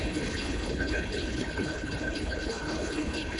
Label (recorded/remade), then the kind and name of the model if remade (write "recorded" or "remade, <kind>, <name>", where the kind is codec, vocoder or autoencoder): remade, codec, HILCodec